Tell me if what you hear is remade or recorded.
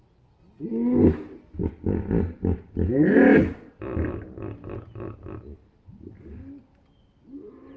recorded